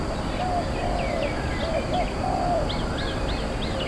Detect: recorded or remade recorded